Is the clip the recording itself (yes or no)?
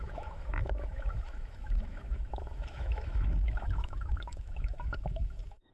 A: no